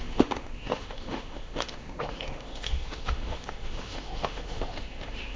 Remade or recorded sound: remade